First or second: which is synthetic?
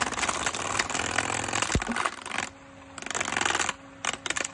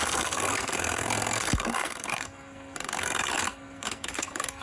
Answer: second